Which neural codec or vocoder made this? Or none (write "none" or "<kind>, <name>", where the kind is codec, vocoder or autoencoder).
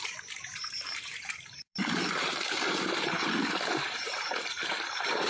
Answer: vocoder, BigVGAN v2